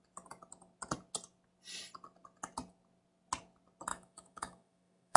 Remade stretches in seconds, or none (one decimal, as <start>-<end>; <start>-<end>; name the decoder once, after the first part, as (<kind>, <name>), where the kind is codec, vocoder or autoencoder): 3.9-5.2 (autoencoder, DAC-VAE)